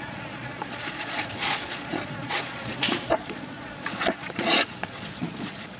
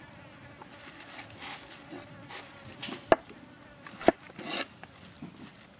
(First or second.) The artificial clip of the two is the first